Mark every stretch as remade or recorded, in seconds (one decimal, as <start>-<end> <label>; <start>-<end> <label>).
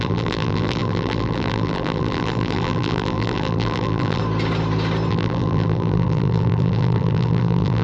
0.0-4.2 remade; 4.2-5.1 recorded; 5.1-7.8 remade